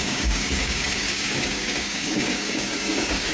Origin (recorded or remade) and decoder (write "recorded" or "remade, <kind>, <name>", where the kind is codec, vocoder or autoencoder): remade, codec, DAC